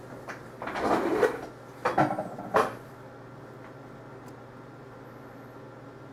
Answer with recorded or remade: recorded